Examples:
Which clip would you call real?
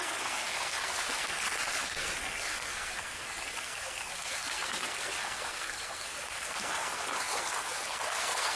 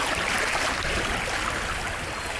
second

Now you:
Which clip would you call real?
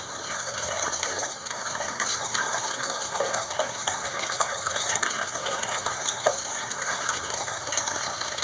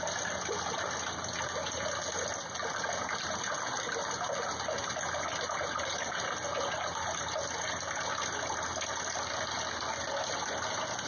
second